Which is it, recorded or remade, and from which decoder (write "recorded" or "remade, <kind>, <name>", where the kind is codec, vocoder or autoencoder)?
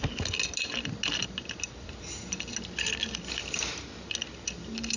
recorded